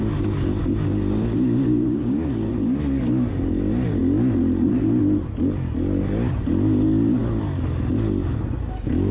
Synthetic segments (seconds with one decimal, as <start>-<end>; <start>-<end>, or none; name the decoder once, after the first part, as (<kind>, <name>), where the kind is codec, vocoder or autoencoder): 0.6-2.5 (codec, DAC)

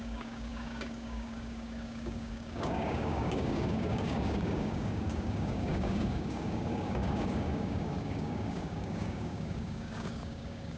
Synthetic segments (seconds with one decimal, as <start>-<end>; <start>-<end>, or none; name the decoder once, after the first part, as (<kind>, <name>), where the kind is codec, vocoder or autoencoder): 0.0-10.8 (codec, DAC)

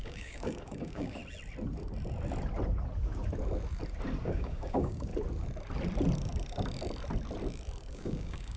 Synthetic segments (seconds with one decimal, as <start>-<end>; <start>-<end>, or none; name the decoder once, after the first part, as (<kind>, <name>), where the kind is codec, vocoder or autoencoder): 0.0-1.2 (codec, DAC); 4.2-5.1; 7.9-8.6

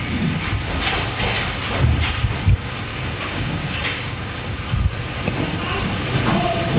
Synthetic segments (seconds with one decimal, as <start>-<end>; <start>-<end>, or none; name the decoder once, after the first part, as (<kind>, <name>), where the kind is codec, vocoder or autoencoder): 2.9-4.6 (codec, DAC)

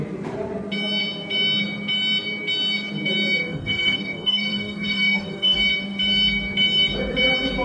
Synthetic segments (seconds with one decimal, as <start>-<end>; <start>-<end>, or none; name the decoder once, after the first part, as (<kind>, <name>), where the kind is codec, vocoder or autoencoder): 3.4-5.6 (codec, DAC)